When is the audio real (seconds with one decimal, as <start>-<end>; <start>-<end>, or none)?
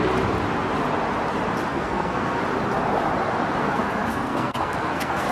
0.0-1.7; 2.4-3.6